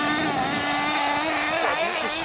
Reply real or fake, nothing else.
real